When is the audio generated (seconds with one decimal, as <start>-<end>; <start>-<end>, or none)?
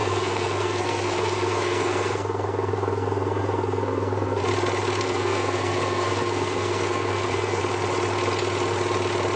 0.0-4.4; 5.0-7.6